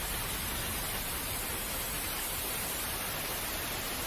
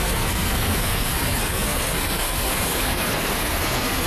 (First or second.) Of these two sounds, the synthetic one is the second